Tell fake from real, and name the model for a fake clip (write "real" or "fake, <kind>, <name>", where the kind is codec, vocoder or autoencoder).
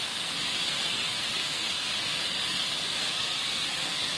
fake, codec, SNAC